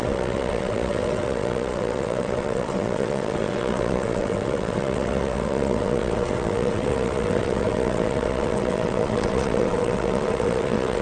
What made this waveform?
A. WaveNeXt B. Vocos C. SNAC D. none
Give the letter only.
A